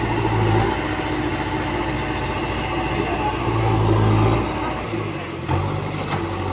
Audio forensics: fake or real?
real